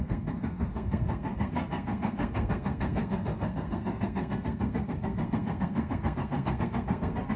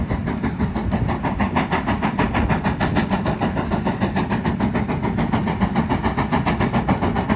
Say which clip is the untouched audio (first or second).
second